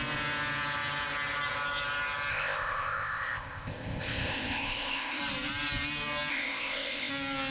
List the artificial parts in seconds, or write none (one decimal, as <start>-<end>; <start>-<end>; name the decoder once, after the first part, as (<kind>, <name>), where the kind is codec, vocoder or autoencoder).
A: 2.3-5.2 (codec, ZipCodec); 6.3-7.1

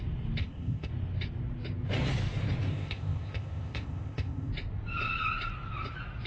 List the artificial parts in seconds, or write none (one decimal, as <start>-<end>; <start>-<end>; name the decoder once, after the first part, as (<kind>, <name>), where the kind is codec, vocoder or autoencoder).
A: 0.4-0.9 (codec, ZipCodec); 2.7-4.5

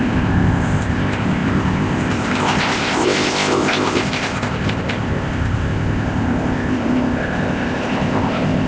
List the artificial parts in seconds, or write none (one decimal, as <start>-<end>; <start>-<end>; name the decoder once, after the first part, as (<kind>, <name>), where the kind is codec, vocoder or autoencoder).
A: 0.0-8.7 (codec, ZipCodec)

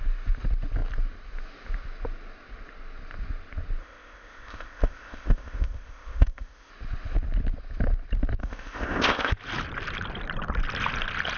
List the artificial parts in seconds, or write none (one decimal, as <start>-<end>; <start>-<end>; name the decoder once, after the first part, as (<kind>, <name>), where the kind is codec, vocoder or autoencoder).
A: 3.8-6.7 (codec, ZipCodec); 8.4-9.3

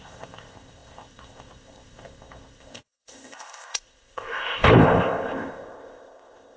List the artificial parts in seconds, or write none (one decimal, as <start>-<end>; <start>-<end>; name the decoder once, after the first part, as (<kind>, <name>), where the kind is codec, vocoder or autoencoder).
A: 0.0-6.6 (codec, ZipCodec)

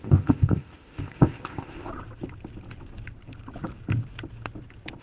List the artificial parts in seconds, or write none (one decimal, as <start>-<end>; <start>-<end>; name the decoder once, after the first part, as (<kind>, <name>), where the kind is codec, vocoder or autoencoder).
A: 0.0-1.9 (codec, ZipCodec)

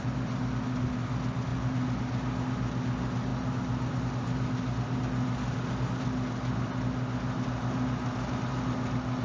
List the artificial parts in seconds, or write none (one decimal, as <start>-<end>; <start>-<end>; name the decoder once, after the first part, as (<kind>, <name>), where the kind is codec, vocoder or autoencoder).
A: none